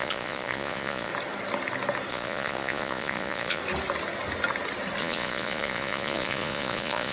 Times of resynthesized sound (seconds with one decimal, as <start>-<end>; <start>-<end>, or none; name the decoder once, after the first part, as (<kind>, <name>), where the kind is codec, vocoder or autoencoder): 0.0-1.1 (vocoder, Vocos); 2.1-3.6; 5.0-7.1